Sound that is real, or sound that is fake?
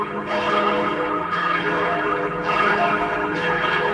fake